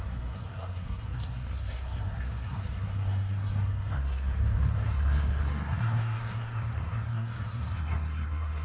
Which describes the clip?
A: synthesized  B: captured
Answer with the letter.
A